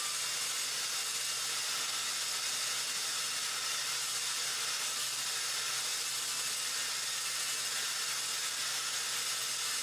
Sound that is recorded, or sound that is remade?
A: recorded